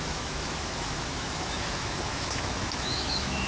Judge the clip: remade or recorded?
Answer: remade